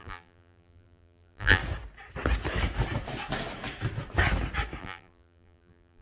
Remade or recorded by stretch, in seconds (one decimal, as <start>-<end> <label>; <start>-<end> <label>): 0.0-1.6 remade; 1.6-4.8 recorded; 4.8-6.0 remade